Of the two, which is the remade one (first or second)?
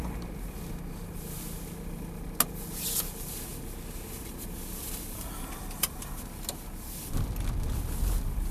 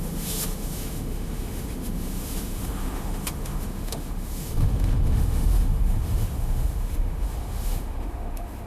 second